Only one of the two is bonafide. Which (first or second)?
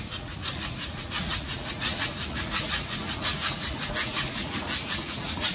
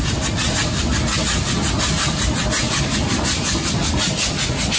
second